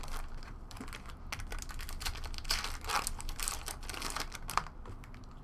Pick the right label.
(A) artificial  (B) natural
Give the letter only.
B